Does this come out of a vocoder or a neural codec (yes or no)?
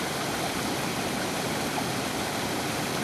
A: no